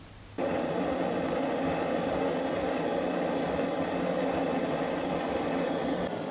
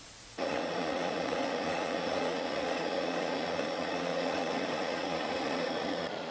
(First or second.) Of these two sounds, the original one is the first